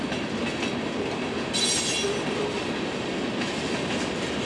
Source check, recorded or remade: recorded